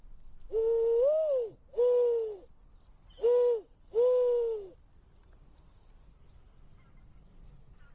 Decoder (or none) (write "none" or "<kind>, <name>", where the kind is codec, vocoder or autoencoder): none